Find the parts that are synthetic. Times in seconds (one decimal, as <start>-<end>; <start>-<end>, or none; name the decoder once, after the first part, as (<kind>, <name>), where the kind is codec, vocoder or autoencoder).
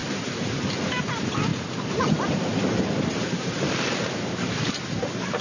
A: 0.0-0.6 (vocoder, BigVGAN v2); 1.5-4.7